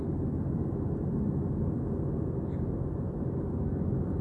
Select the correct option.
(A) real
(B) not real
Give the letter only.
A